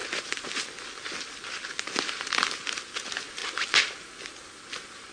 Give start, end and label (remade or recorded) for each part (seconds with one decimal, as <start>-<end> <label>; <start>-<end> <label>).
0.0-5.1 recorded